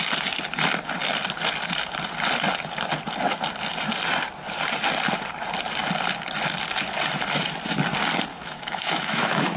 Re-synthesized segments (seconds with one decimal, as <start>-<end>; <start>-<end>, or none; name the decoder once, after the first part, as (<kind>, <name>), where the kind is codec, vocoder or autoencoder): 8.3-9.6 (autoencoder, DAC-VAE)